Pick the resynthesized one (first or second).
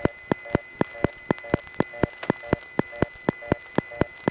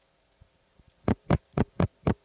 second